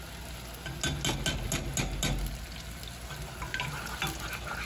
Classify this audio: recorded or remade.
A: recorded